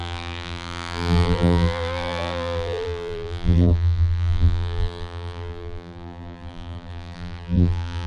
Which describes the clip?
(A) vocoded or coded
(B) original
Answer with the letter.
A